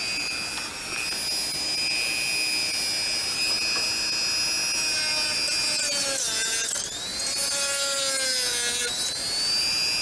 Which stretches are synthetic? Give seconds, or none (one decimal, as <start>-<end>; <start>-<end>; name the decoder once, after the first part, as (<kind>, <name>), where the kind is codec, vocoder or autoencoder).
none